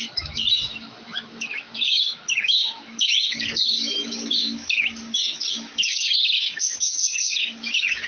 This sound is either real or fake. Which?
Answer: fake